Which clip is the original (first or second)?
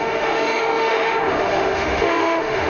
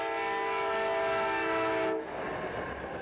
second